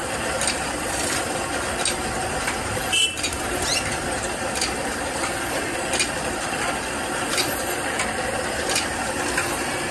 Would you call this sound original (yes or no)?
yes